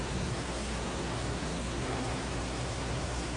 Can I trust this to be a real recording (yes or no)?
no